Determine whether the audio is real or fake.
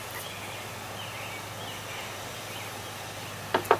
real